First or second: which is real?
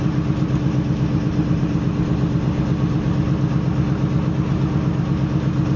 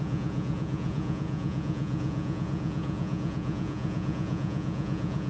first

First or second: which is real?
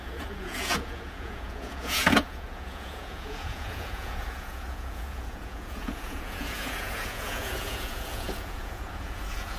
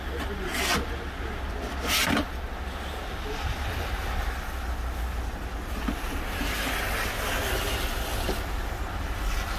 second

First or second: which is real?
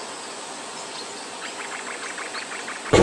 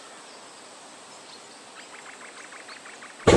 second